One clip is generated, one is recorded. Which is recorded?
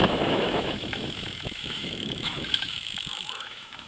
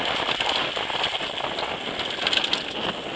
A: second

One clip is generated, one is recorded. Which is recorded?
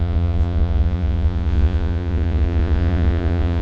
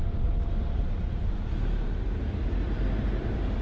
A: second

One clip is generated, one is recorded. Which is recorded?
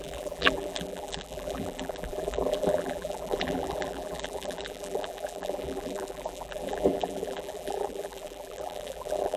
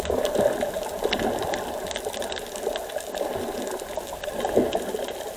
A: second